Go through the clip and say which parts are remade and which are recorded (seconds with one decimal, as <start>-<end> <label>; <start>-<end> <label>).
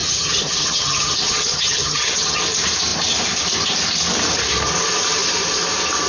0.0-2.4 remade; 2.4-6.1 recorded